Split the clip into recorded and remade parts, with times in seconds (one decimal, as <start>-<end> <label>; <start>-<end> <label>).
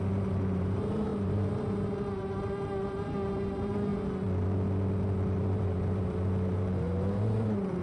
0.0-3.9 remade; 3.9-5.4 recorded; 5.4-7.8 remade